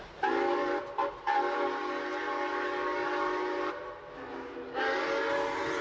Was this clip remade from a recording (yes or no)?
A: no